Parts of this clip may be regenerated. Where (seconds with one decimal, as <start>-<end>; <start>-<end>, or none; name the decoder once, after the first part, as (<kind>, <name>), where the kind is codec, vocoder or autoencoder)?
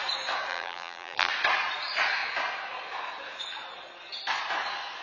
0.5-1.3 (vocoder, BigVGAN v2)